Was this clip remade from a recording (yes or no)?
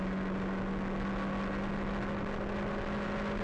no